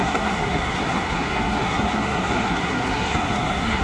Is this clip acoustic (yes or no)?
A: no